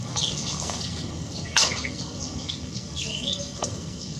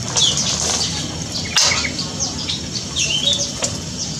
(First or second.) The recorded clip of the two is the second